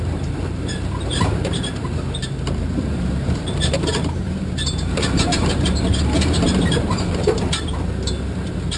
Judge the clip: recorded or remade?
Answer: remade